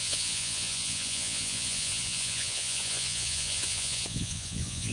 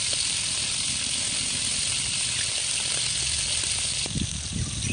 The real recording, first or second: second